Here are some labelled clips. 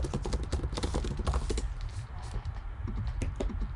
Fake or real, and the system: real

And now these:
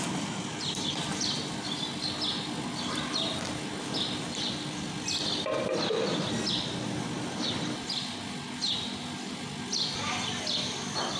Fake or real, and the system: real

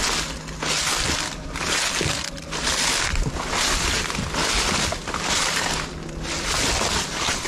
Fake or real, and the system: real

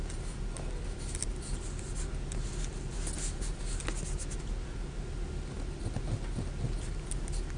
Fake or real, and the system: real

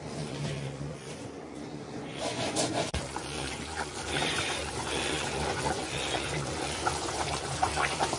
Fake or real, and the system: fake, vocoder, Vocos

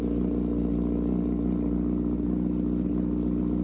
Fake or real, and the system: real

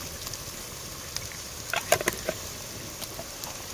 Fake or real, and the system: real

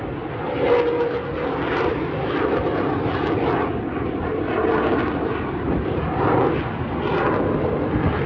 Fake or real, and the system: real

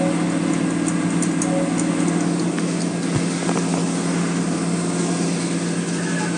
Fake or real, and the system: real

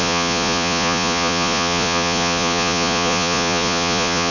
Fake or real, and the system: fake, vocoder, Vocos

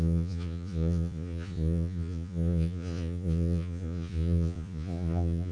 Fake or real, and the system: fake, vocoder, Vocos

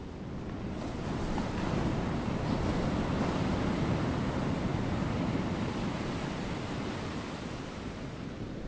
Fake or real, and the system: real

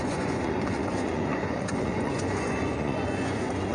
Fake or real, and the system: fake, vocoder, Vocos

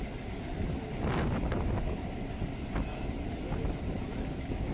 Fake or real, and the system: real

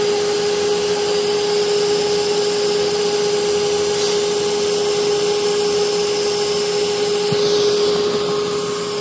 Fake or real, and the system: real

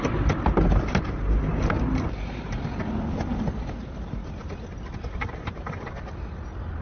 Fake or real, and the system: real